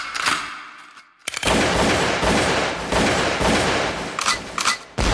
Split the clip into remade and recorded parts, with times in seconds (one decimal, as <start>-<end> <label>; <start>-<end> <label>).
0.0-5.1 recorded